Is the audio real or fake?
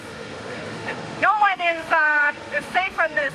fake